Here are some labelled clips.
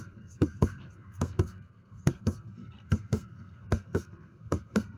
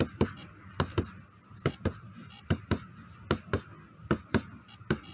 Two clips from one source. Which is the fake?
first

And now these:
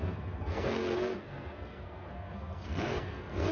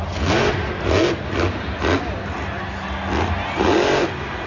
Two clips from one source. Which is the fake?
first